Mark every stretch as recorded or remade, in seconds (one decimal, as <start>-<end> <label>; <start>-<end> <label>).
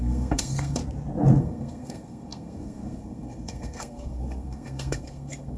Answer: 0.0-0.8 remade; 0.8-1.4 recorded; 1.4-5.6 remade